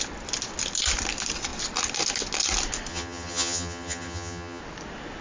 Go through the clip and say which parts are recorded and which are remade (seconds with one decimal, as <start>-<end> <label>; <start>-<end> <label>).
0.0-2.9 recorded; 2.9-4.6 remade; 4.6-5.2 recorded